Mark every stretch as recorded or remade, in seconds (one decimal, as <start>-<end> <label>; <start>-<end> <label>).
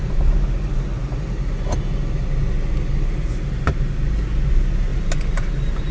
0.0-4.9 recorded; 4.9-5.9 remade